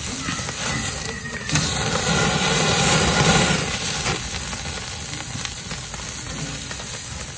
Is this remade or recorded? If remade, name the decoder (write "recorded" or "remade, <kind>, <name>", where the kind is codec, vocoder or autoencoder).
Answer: recorded